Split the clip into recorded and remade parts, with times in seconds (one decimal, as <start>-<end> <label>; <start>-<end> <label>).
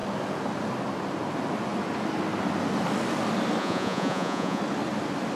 0.0-3.6 recorded; 3.6-4.6 remade; 4.6-5.4 recorded